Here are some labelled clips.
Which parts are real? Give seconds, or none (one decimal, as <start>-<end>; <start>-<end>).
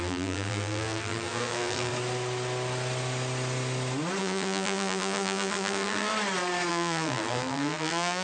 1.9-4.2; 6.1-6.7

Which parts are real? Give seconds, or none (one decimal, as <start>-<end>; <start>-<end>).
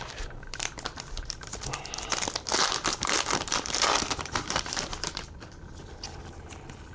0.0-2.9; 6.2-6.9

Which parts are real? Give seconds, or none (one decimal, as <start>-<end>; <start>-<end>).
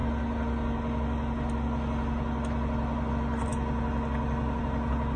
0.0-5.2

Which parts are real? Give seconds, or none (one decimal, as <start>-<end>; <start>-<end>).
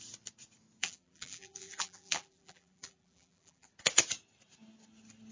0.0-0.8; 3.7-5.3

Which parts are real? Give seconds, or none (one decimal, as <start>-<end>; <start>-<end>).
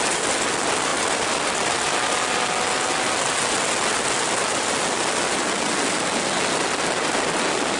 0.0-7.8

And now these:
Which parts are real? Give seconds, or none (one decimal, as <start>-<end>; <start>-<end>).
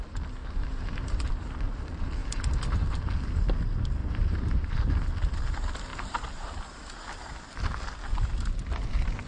0.0-0.4; 1.3-2.2; 3.1-4.0; 4.7-9.3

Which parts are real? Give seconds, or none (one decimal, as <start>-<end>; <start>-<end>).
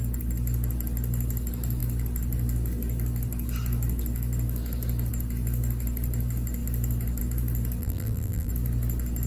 0.0-7.8; 8.5-9.3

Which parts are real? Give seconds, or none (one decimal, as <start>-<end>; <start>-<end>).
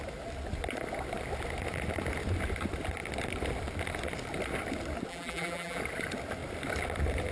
0.0-5.1; 5.8-7.3